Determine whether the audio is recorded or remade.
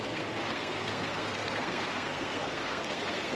remade